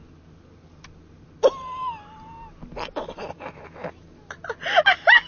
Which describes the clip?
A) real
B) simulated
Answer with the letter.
A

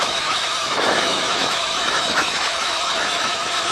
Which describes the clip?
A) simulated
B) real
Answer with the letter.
A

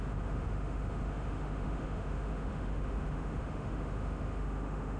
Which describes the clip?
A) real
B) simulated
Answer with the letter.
B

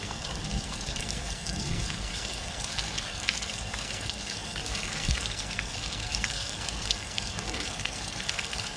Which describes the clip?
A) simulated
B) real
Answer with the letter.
A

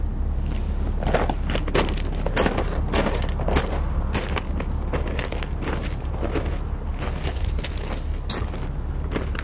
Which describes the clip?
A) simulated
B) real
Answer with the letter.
B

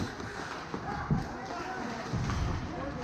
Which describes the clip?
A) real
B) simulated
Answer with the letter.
A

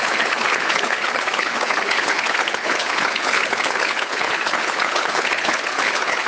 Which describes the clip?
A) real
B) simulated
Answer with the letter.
B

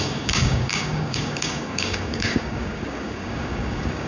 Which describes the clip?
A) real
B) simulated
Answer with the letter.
B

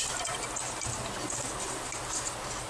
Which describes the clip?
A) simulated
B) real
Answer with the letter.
B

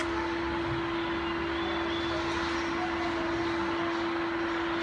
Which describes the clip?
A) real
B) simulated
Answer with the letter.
A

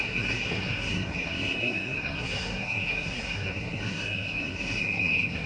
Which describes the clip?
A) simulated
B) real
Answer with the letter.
A